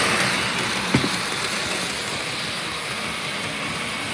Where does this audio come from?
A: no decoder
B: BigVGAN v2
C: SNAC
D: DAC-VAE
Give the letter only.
A